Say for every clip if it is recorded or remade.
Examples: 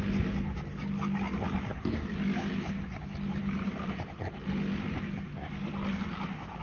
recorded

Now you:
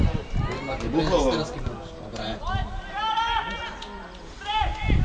recorded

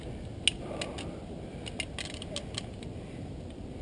recorded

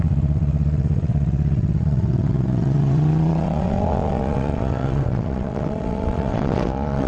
remade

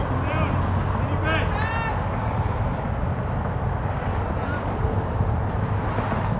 recorded